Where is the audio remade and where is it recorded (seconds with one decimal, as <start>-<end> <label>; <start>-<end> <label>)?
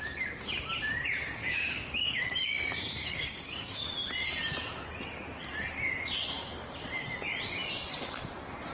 0.0-1.4 recorded; 1.4-3.9 remade; 3.9-8.7 recorded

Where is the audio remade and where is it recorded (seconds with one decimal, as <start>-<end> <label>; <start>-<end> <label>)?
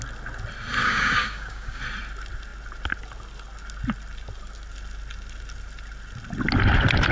0.0-0.8 recorded; 0.8-1.8 remade; 1.8-7.1 recorded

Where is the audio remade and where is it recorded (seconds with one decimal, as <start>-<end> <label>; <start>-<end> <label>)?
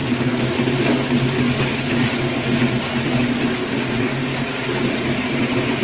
0.0-3.2 recorded; 3.2-4.7 remade; 4.7-5.8 recorded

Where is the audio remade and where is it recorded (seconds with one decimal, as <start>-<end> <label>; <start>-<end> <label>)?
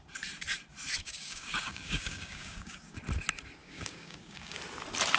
0.0-1.0 recorded; 1.0-3.0 remade; 3.0-3.6 recorded; 3.6-4.6 remade; 4.6-5.2 recorded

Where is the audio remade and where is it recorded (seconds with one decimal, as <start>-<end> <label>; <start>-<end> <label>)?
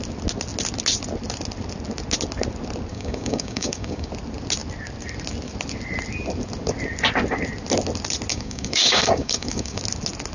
0.0-2.9 recorded; 2.9-4.1 remade; 4.1-8.3 recorded; 8.3-9.8 remade; 9.8-10.3 recorded